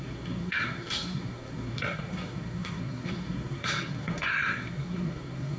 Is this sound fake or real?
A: fake